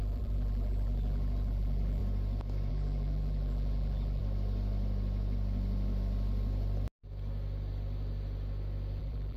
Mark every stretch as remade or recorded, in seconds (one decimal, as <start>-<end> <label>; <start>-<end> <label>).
0.0-2.0 remade; 2.0-2.7 recorded; 2.7-4.2 remade; 4.2-9.0 recorded; 9.0-9.4 remade